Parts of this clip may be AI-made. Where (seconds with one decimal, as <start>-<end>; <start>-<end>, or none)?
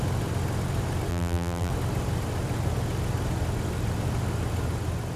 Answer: 1.1-1.7